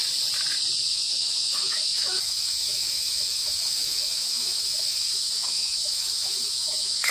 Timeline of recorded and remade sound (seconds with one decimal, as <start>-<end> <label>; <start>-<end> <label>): 0.0-0.9 recorded; 0.9-7.1 remade